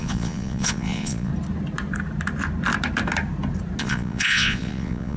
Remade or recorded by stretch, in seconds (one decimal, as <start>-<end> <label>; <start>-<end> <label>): 0.0-1.3 remade; 1.3-3.8 recorded; 3.8-5.2 remade